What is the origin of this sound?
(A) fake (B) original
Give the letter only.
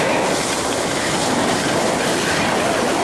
B